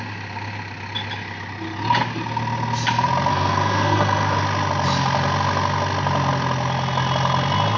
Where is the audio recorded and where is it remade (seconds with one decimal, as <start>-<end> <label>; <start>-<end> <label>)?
0.0-3.3 recorded; 3.3-4.4 remade; 4.4-7.8 recorded

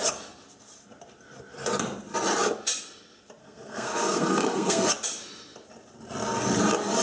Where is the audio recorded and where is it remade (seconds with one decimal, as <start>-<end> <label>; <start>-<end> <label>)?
0.0-3.4 recorded; 3.4-4.9 remade; 4.9-7.0 recorded